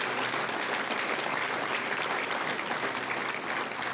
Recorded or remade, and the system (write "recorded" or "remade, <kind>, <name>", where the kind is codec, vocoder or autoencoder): recorded